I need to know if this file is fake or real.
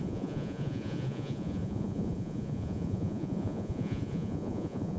fake